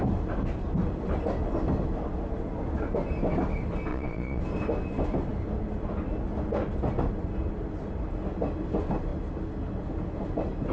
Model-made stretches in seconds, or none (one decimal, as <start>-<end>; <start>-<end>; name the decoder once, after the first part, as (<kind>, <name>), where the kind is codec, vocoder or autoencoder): 3.9-4.4 (vocoder, Vocos)